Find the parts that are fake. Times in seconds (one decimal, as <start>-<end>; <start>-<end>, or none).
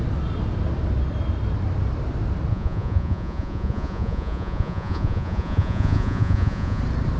2.5-6.8